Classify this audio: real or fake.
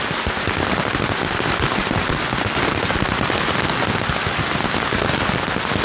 real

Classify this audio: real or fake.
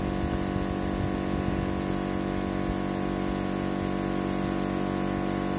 real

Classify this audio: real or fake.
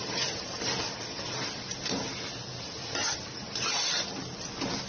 real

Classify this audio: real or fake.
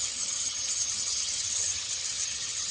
fake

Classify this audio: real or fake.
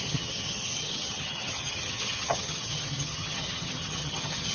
fake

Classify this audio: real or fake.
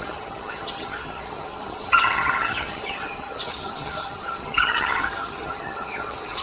fake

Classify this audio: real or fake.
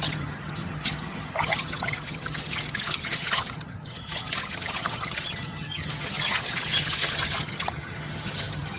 fake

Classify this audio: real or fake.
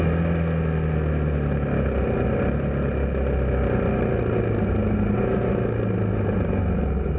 real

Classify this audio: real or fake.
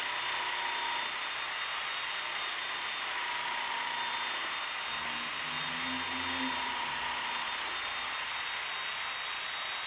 real